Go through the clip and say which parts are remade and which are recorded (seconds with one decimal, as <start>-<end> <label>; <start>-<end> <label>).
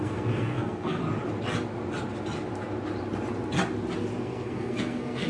0.0-1.0 remade; 1.0-4.2 recorded; 4.2-5.3 remade